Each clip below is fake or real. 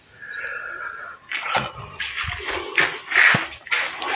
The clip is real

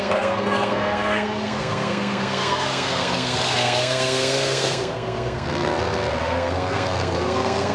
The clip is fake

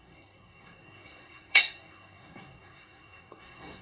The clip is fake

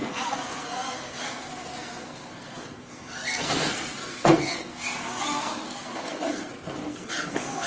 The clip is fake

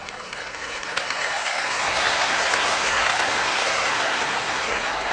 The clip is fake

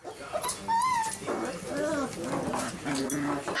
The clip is real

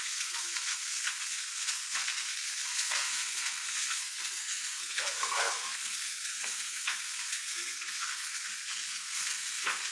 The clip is fake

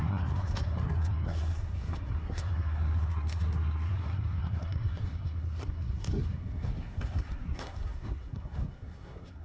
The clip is fake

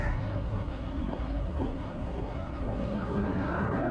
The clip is fake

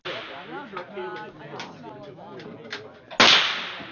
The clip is real